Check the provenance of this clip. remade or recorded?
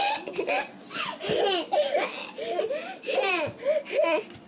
recorded